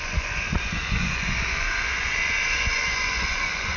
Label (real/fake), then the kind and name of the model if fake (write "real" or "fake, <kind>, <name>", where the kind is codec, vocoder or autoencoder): fake, vocoder, Vocos